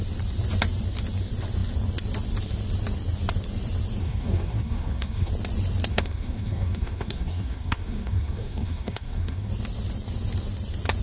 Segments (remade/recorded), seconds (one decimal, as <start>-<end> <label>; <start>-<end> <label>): 0.0-4.0 recorded; 4.0-5.3 remade; 5.3-5.9 recorded; 5.9-9.5 remade; 9.5-11.0 recorded